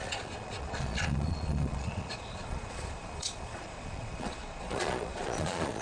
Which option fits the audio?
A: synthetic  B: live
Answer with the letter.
A